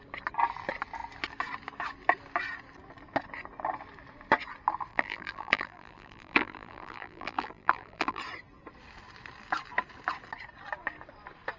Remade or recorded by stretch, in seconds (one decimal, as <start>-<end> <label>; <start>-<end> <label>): 0.0-4.9 recorded; 4.9-8.2 remade; 8.2-11.6 recorded